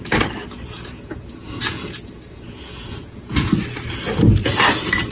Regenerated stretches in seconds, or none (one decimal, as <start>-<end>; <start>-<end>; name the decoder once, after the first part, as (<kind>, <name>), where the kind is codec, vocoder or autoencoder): 0.4-3.5 (vocoder, Vocos)